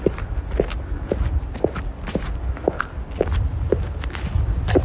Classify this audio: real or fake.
real